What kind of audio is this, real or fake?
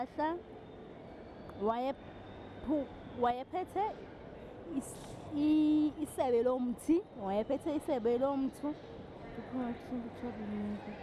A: real